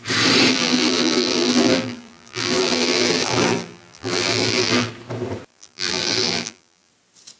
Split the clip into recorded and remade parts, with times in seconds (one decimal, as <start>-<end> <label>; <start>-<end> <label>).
0.0-0.5 recorded; 0.5-4.9 remade; 4.9-5.5 recorded; 5.5-6.9 remade; 6.9-7.4 recorded